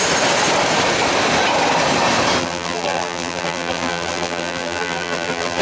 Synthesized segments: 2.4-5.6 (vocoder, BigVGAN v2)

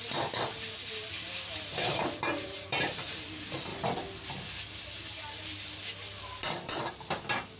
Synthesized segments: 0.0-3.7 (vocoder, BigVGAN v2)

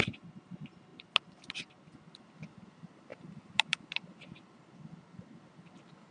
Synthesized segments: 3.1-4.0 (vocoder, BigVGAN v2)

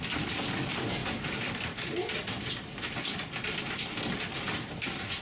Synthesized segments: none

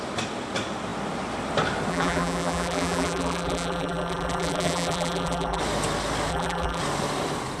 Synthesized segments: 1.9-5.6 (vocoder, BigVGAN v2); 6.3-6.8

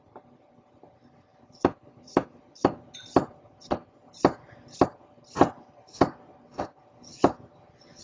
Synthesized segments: 1.3-2.2 (vocoder, BigVGAN v2)

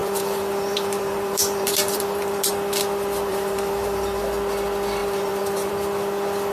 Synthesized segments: 0.0-2.5 (vocoder, BigVGAN v2); 3.3-4.2; 5.0-5.7